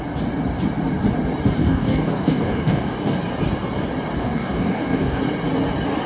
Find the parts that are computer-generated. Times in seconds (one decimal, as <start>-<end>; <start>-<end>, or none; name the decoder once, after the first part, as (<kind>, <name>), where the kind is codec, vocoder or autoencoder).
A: 1.6-3.2 (codec, DAC); 4.2-5.2

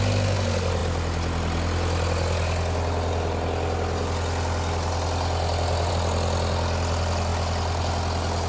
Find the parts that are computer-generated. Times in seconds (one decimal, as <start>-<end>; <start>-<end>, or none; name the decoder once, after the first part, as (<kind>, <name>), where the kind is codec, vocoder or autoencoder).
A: none

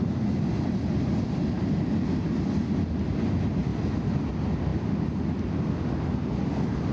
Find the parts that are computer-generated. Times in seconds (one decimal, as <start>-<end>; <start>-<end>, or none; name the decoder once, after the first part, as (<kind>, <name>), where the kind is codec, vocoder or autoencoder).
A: none